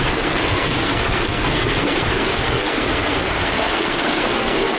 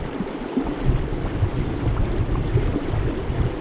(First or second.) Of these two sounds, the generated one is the first